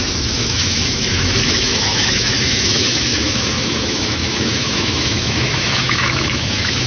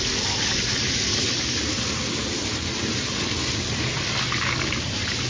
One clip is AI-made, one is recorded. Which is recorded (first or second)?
second